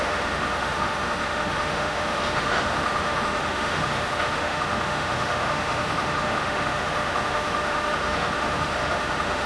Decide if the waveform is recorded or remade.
remade